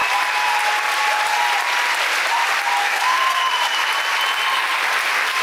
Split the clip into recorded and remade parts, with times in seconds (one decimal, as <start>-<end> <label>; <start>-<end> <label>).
0.0-2.8 recorded; 2.8-3.4 remade; 3.4-5.4 recorded